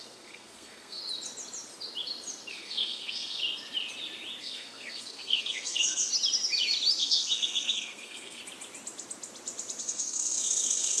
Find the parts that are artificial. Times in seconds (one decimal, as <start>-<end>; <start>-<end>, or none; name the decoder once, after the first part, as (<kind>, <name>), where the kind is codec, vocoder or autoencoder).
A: 0.0-1.0 (codec, SNAC); 2.5-3.4; 4.4-6.1; 7.0-8.4; 9.8-11.0